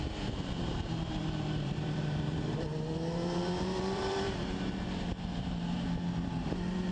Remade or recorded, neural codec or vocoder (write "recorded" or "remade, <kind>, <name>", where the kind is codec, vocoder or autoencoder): remade, vocoder, BigVGAN v2